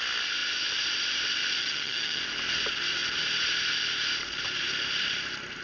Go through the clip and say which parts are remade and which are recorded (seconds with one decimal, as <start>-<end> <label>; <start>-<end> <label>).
0.0-1.6 recorded; 1.6-2.2 remade; 2.2-5.6 recorded